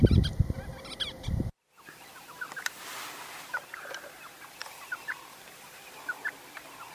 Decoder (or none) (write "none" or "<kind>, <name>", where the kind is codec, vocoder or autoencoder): none